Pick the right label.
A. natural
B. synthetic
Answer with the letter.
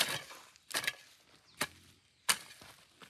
A